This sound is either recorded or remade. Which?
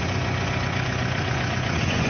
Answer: remade